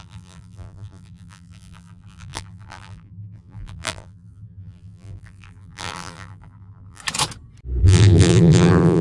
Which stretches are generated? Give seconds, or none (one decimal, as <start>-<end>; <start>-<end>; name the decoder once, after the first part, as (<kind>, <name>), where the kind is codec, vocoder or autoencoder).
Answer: 0.0-7.0 (vocoder, BigVGAN v2); 7.8-9.0